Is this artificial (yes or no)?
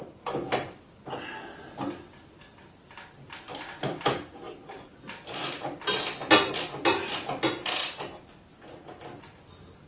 no